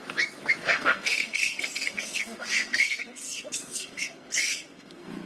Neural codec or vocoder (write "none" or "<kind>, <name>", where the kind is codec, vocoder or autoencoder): codec, SNAC